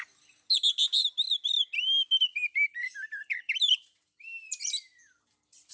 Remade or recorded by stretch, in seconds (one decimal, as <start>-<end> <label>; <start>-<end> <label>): 0.0-2.3 recorded; 2.3-5.7 remade